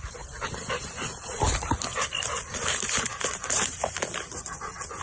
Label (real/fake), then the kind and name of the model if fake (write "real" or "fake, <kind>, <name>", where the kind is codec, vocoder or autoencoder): real